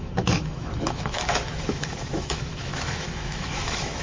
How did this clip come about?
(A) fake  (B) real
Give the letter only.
A